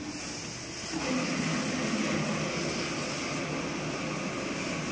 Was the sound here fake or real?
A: real